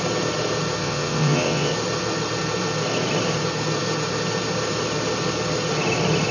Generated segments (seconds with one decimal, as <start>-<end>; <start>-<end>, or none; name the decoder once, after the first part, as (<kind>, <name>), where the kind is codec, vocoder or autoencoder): 0.8-1.7 (vocoder, WaveNeXt)